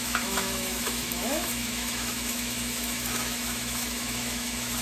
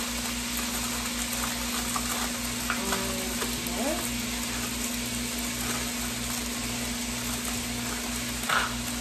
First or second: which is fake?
first